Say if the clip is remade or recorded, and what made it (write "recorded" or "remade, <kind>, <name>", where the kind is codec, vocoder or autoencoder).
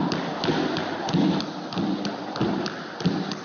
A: recorded